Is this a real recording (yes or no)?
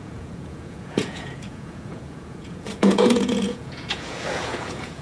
no